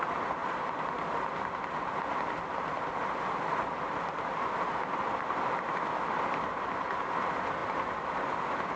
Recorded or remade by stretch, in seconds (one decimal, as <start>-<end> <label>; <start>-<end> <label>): 0.0-8.8 recorded